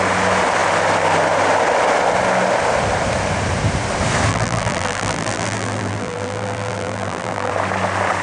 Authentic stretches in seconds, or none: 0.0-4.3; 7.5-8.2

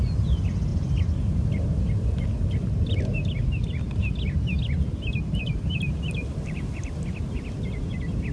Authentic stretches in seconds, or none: 0.0-5.4; 6.9-8.3

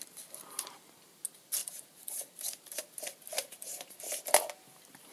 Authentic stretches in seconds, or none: 0.0-1.6; 2.8-3.3; 4.0-5.1

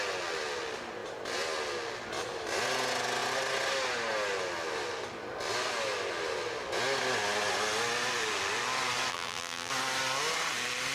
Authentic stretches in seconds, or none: 0.0-9.1; 9.7-10.9